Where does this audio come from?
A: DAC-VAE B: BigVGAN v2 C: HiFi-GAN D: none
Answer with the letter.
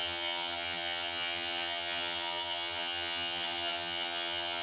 C